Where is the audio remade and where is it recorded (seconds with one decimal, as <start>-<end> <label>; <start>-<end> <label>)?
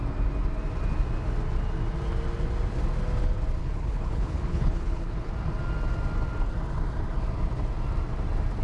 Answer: 0.0-3.6 recorded; 3.6-5.3 remade; 5.3-8.6 recorded